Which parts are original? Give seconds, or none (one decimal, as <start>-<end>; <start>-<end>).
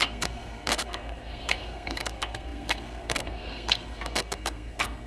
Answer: none